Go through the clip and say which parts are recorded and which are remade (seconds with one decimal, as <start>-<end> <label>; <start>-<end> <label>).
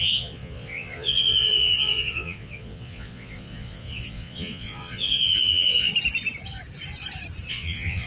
0.0-5.9 remade; 5.9-7.5 recorded; 7.5-8.1 remade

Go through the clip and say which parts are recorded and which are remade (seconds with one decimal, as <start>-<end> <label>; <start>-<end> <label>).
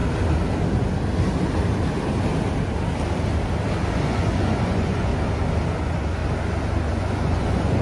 0.0-3.9 recorded; 3.9-5.1 remade; 5.1-5.7 recorded; 5.7-6.2 remade; 6.2-6.9 recorded; 6.9-7.8 remade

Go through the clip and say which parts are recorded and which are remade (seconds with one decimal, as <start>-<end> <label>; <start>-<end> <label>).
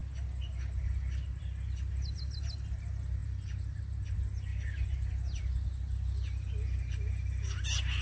0.0-8.0 recorded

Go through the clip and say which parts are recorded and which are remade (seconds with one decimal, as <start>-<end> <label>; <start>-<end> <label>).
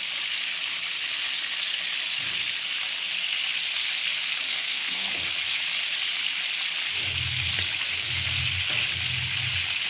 0.0-4.5 recorded; 4.5-5.1 remade; 5.1-9.9 recorded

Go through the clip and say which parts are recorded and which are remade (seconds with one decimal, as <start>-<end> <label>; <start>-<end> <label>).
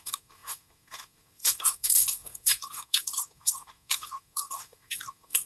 0.0-5.5 remade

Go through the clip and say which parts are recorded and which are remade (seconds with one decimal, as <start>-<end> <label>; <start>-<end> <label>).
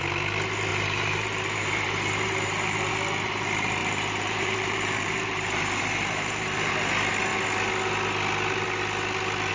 0.0-0.7 recorded; 0.7-2.9 remade; 2.9-3.8 recorded; 3.8-6.7 remade; 6.7-9.5 recorded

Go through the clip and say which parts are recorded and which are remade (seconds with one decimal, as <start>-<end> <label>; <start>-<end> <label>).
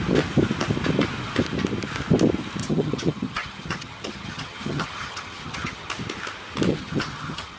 0.0-2.6 recorded; 2.6-5.9 remade; 5.9-6.7 recorded; 6.7-7.6 remade